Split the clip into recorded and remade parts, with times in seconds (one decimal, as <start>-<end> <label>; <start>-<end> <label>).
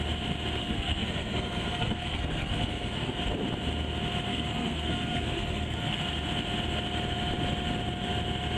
0.0-0.6 recorded; 0.6-3.2 remade; 3.2-4.3 recorded; 4.3-6.0 remade; 6.0-8.6 recorded